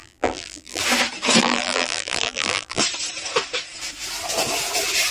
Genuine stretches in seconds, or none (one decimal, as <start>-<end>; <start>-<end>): 0.8-1.4; 2.8-5.1